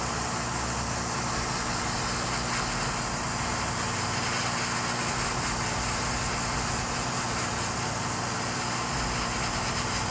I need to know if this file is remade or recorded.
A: recorded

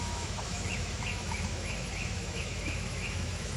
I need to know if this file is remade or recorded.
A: remade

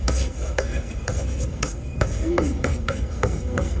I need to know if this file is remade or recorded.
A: remade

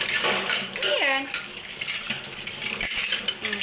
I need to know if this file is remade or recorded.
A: recorded